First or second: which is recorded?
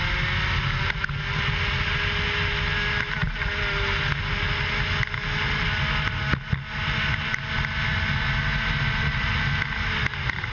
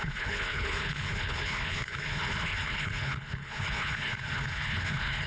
first